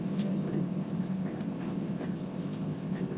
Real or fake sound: fake